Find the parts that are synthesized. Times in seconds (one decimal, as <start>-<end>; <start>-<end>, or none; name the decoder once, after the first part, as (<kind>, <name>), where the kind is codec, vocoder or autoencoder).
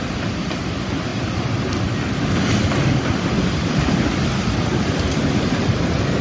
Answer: none